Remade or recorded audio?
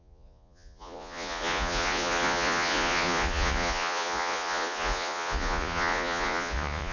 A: remade